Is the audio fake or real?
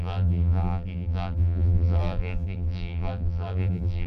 fake